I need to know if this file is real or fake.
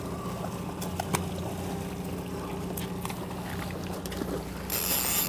real